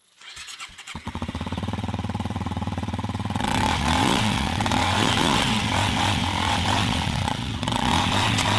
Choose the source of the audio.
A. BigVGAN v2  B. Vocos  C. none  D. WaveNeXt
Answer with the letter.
D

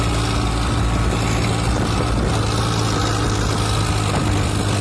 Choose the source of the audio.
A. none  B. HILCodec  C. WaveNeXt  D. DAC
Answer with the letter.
A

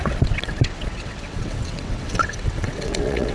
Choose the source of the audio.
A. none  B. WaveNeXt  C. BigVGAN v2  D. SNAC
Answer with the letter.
B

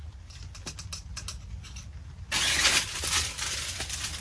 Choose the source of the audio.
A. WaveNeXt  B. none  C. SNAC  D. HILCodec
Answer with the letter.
B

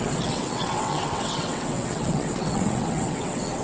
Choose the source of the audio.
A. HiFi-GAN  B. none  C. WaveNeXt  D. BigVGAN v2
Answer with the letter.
C